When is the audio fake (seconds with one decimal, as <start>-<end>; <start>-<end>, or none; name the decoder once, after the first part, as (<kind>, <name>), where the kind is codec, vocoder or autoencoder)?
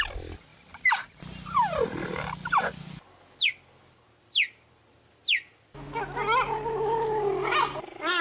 none